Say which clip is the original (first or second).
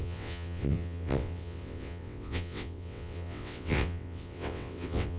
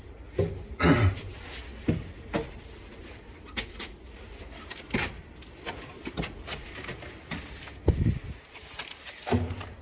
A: second